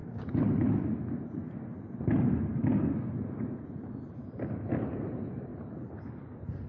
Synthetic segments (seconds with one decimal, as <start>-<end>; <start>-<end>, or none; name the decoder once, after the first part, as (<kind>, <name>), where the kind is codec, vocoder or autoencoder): 3.9-5.5 (vocoder, BigVGAN v2)

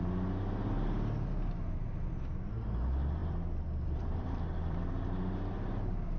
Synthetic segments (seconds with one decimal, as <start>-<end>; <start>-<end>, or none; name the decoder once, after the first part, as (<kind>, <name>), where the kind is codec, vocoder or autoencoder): 3.2-4.8 (vocoder, BigVGAN v2)

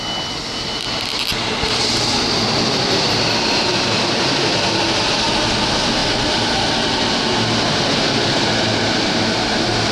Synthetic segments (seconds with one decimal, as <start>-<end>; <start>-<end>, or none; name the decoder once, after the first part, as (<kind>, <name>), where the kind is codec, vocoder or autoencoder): none

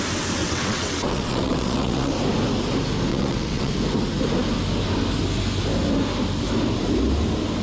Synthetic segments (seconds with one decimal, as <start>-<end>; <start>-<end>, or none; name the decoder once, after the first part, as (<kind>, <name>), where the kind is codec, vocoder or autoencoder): 0.4-2.1 (vocoder, WaveNeXt); 3.1-3.7

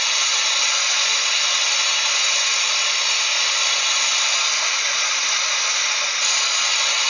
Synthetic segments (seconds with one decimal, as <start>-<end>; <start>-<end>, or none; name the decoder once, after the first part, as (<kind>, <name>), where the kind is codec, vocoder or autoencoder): 4.8-5.5 (vocoder, Vocos)

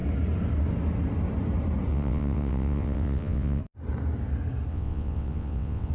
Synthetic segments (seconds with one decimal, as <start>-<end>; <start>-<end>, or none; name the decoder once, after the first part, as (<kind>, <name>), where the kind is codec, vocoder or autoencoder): 1.9-3.6 (vocoder, WaveNeXt); 4.7-5.9

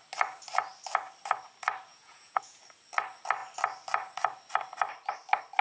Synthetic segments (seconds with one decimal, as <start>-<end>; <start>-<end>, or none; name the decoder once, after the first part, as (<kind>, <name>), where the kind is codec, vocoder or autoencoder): 1.9-2.6 (vocoder, Vocos)

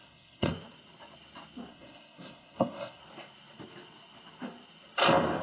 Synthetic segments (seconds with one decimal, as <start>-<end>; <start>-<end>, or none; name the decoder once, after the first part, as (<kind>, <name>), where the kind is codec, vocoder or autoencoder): 0.0-0.5 (codec, SNAC); 1.7-3.0